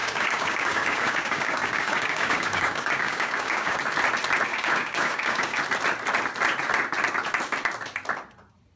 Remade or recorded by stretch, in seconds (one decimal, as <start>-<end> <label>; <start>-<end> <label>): 0.0-3.8 remade; 3.8-4.5 recorded; 4.5-5.6 remade; 5.6-8.8 recorded